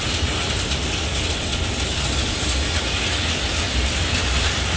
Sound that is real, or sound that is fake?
real